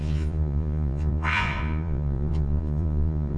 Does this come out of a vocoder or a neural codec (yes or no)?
yes